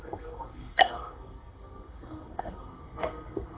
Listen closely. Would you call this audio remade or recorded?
remade